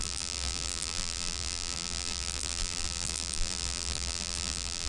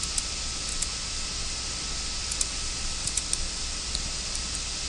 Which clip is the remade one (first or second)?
first